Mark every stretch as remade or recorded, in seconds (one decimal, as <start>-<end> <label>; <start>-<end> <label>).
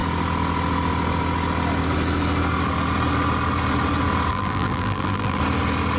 0.0-4.3 recorded; 4.3-5.4 remade; 5.4-6.0 recorded